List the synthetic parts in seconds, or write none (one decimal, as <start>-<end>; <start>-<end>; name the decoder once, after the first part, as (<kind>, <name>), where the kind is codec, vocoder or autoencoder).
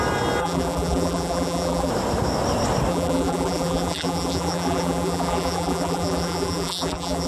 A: 0.4-1.9 (vocoder, BigVGAN v2); 2.9-7.3